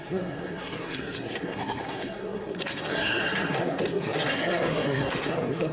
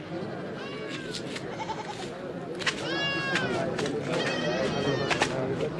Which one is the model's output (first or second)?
first